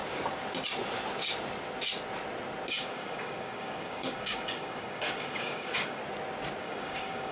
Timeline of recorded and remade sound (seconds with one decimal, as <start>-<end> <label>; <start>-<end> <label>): 0.0-2.7 recorded; 2.7-6.0 remade; 6.0-6.6 recorded; 6.6-7.3 remade